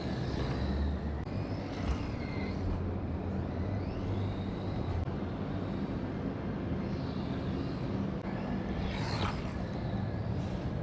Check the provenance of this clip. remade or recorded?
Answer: recorded